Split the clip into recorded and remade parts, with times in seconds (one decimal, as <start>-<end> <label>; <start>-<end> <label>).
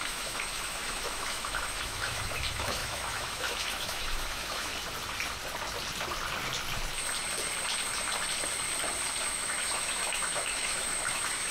0.0-4.7 remade; 4.7-9.2 recorded; 9.2-11.5 remade